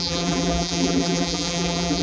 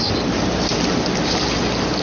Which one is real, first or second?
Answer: second